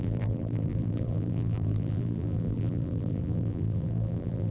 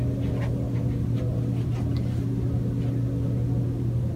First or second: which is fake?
first